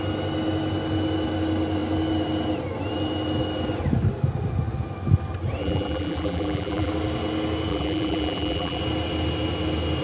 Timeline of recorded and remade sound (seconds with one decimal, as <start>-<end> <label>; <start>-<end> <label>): 0.0-5.6 recorded; 5.6-6.9 remade; 6.9-7.7 recorded; 7.7-8.8 remade; 8.8-10.0 recorded